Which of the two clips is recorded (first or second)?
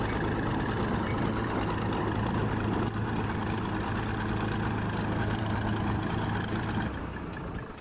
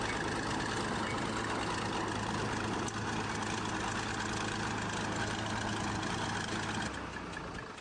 second